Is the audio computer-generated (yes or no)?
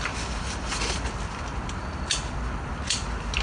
no